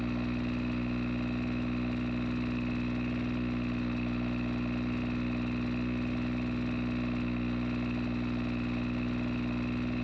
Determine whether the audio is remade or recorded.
recorded